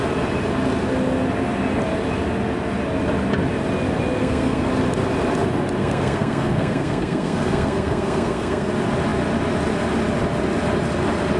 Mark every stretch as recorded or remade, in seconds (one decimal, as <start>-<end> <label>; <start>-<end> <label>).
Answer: 0.0-4.2 recorded; 4.2-4.7 remade; 4.7-5.8 recorded; 5.8-8.7 remade; 8.7-11.4 recorded

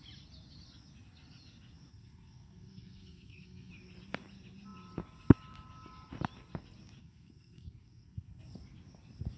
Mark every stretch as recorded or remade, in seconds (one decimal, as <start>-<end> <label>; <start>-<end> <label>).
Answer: 0.0-1.9 recorded; 1.9-3.7 remade; 3.7-7.0 recorded; 7.0-8.4 remade; 8.4-9.4 recorded

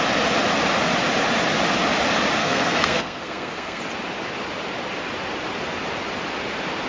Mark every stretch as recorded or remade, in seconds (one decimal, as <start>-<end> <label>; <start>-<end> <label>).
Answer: 0.0-2.4 recorded; 2.4-3.8 remade; 3.8-6.9 recorded

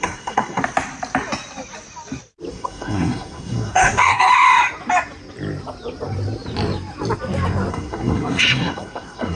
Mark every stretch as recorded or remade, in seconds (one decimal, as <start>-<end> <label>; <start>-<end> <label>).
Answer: 0.0-0.6 remade; 0.6-2.5 recorded; 2.5-4.3 remade; 4.3-7.7 recorded; 7.7-9.4 remade

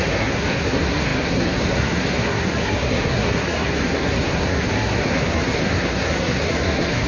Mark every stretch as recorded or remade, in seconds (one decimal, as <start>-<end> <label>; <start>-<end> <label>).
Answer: 0.0-7.1 remade

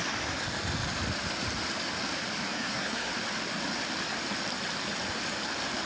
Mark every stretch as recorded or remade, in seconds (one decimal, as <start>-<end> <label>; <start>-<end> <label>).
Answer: 0.0-2.5 recorded; 2.5-3.1 remade; 3.1-5.9 recorded